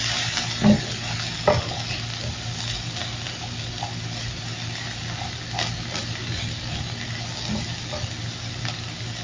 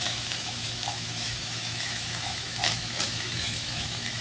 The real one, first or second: first